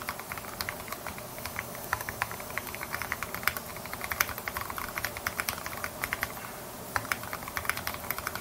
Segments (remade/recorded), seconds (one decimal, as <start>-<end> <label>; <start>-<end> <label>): 0.0-1.3 recorded; 1.3-3.2 remade; 3.2-8.4 recorded